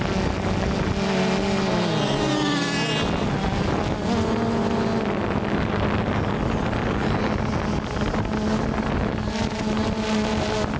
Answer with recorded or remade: recorded